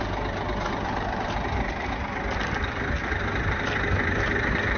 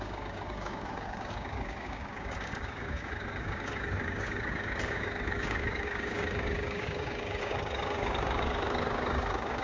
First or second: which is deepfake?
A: second